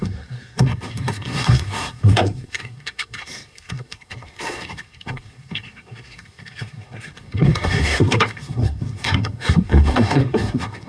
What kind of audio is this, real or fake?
fake